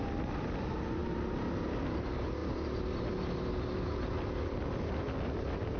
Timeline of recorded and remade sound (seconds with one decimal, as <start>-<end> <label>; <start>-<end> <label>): 0.0-5.8 recorded